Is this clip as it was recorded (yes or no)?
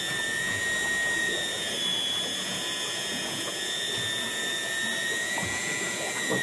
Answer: no